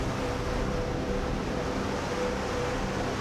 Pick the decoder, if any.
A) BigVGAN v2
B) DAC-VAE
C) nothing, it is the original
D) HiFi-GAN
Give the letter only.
C